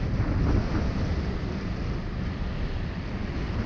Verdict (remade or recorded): recorded